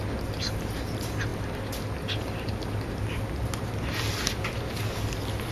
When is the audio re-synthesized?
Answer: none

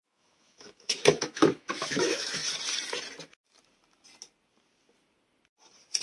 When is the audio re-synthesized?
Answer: 0.0-2.4

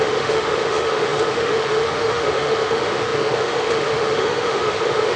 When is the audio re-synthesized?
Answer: 0.0-5.2

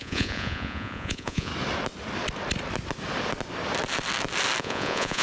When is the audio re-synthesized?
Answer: 0.0-1.5; 4.6-5.2

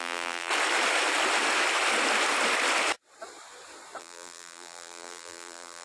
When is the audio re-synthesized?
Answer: 0.0-0.5; 4.0-5.8

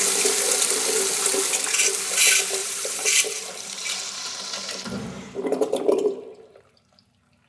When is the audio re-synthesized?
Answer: 2.6-6.7

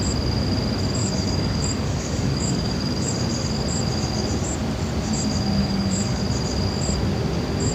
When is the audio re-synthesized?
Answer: 1.0-3.1; 5.6-6.2

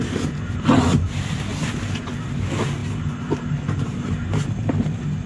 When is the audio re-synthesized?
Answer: none